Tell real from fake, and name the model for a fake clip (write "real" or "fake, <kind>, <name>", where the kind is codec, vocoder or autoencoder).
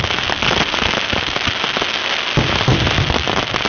real